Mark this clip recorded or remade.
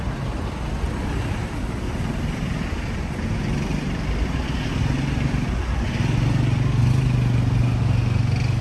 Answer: recorded